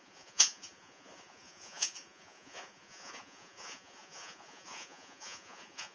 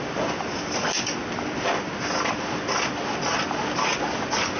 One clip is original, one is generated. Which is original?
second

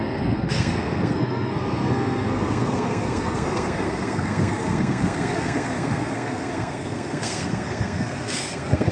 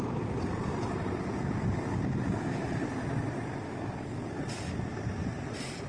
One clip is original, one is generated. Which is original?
second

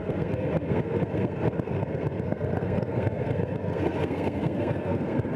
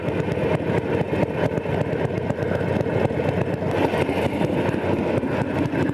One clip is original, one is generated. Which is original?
second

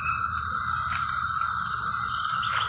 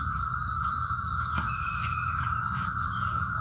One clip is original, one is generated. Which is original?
first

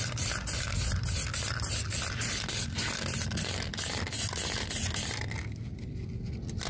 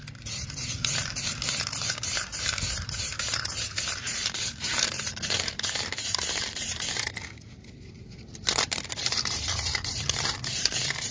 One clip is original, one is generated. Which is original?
first